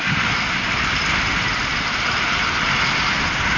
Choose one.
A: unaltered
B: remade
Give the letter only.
A